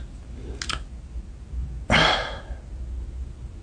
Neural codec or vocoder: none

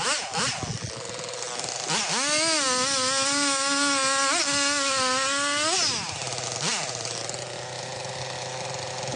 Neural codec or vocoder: none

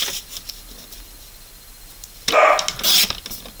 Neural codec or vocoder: none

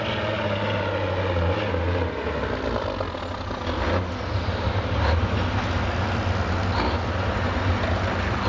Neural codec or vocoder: none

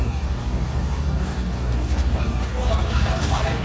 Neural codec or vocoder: codec, DAC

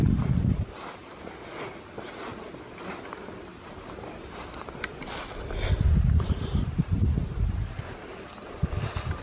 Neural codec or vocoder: none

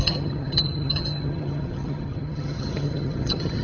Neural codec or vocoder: vocoder, HiFi-GAN